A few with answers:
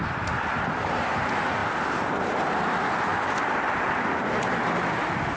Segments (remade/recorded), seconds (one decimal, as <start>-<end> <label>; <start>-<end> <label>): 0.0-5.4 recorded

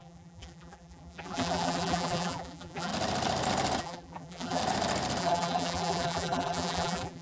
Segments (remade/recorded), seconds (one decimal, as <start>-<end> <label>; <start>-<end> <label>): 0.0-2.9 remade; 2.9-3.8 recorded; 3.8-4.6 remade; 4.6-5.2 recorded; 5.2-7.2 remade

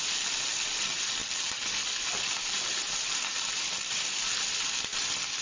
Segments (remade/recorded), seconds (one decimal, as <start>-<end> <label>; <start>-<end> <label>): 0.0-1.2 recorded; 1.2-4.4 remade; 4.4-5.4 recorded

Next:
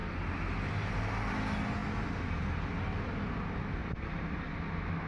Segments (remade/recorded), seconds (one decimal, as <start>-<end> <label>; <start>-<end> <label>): 0.0-0.7 remade; 0.7-3.8 recorded; 3.8-4.5 remade; 4.5-5.1 recorded